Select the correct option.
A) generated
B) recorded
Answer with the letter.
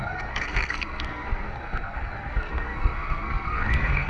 A